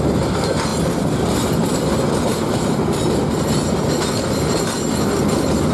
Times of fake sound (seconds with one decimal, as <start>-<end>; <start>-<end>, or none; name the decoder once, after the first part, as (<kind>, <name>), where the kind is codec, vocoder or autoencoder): none